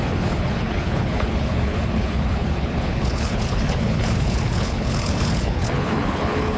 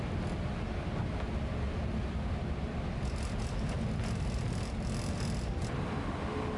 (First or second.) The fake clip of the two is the first